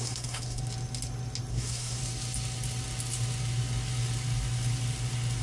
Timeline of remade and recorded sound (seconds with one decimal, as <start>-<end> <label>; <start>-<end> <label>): 0.0-0.6 remade; 0.6-1.5 recorded; 1.5-2.0 remade; 2.0-5.4 recorded